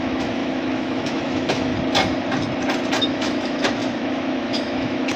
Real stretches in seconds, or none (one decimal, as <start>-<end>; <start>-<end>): 1.7-3.0